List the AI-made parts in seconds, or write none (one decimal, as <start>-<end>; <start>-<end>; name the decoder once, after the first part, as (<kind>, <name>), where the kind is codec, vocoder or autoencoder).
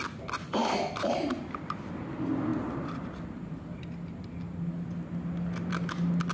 0.6-1.9 (vocoder, BigVGAN v2)